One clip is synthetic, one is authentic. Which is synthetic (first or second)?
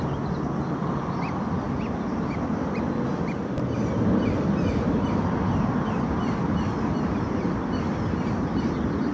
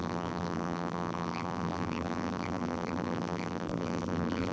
second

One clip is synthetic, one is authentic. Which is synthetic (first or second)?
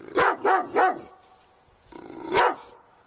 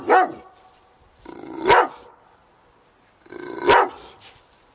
first